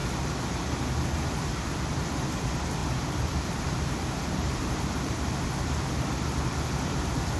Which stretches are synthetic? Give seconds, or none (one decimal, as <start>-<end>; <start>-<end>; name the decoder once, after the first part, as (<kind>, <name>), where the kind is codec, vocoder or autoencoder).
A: 2.8-5.5 (vocoder, BigVGAN v2)